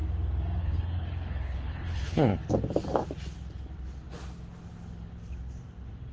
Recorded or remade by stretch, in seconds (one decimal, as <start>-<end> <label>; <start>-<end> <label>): 0.0-0.6 recorded; 0.6-2.3 remade; 2.3-6.1 recorded